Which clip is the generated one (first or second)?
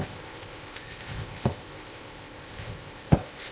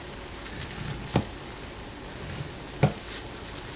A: first